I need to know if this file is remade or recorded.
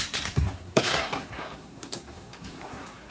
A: remade